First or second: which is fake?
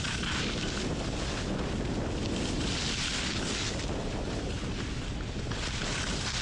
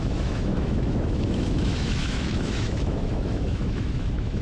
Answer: second